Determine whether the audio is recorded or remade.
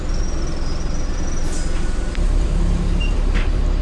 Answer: remade